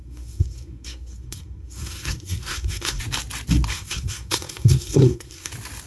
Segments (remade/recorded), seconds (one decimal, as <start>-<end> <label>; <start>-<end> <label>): 0.0-3.0 remade; 3.0-3.7 recorded; 3.7-5.5 remade; 5.5-5.9 recorded